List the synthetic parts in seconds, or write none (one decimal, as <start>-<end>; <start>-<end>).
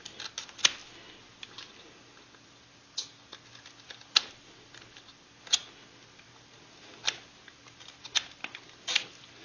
none